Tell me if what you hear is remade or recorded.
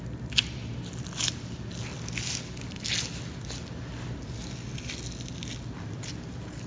recorded